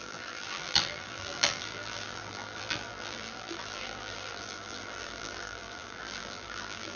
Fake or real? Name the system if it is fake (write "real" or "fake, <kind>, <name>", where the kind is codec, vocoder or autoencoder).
fake, vocoder, BigVGAN v2